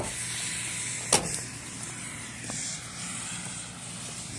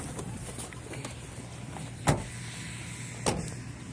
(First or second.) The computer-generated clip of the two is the first